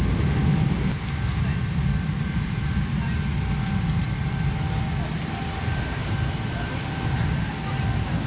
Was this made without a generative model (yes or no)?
yes